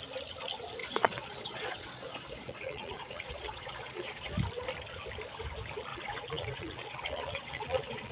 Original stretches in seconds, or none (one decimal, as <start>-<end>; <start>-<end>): 0.0-0.8; 4.3-5.9